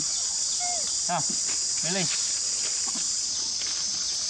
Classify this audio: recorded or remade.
recorded